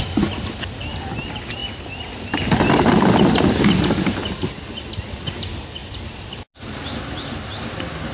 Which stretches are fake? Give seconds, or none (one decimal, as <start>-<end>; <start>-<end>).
none